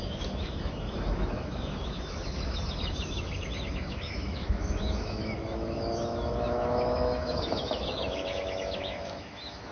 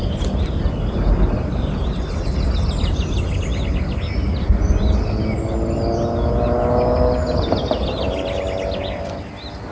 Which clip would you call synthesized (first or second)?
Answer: first